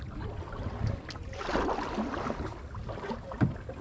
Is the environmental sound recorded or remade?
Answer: recorded